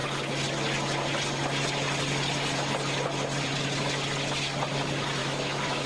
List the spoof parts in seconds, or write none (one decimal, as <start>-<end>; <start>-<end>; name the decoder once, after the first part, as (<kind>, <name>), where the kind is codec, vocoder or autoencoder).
5.2-5.9 (autoencoder, DAC-VAE)

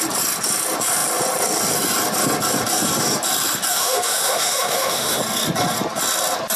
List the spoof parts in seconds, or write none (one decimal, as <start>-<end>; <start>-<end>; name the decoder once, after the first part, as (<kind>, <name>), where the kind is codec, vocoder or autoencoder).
3.7-5.2 (autoencoder, DAC-VAE)

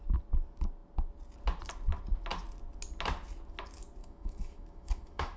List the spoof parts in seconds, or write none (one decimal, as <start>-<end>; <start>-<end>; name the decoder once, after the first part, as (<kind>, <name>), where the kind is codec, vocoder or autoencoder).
4.0-5.4 (autoencoder, DAC-VAE)

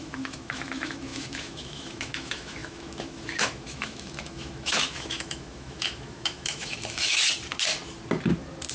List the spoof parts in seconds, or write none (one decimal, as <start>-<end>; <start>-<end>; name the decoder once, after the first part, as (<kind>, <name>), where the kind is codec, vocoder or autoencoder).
0.0-7.2 (autoencoder, DAC-VAE)